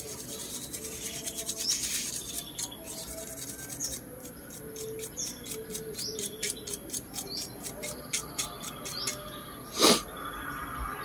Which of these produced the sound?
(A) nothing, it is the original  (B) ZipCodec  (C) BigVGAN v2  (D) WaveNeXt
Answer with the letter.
A